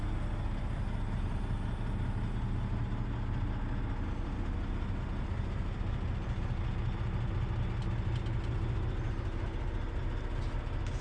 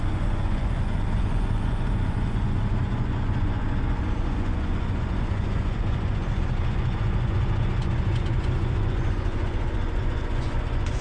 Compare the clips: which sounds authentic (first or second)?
first